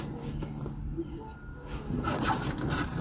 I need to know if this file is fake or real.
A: real